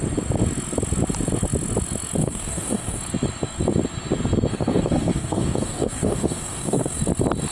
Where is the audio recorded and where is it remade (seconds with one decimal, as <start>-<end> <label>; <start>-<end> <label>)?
0.0-2.2 recorded; 2.2-3.0 remade; 3.0-4.5 recorded; 4.5-7.0 remade; 7.0-7.5 recorded